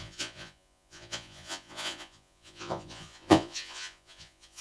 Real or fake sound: fake